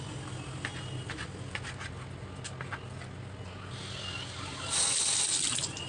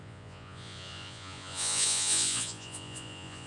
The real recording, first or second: first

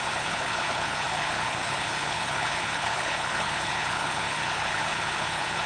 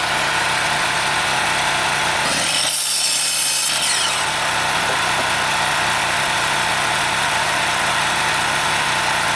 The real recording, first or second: second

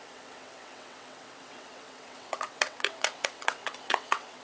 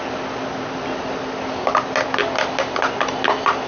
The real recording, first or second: second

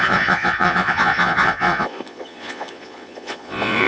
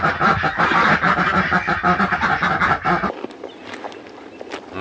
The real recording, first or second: second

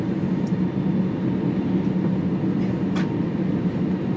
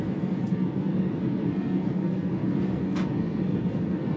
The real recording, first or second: first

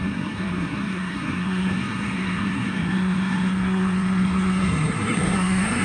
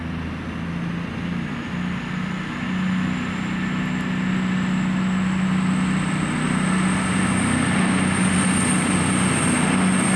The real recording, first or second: second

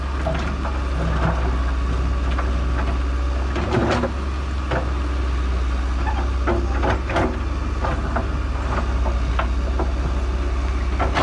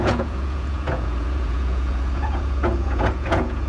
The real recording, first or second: first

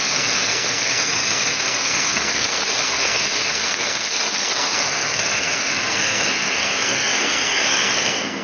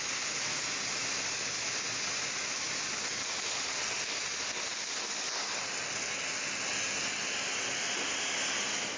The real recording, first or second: second